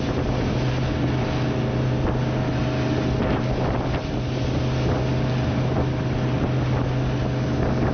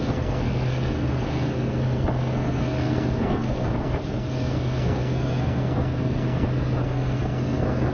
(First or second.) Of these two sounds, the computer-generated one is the second